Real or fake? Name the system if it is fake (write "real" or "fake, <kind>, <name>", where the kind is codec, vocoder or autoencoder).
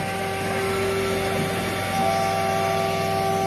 real